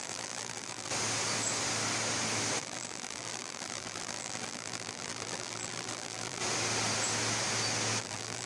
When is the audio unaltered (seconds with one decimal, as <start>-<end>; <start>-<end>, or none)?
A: 0.9-2.6; 6.4-8.0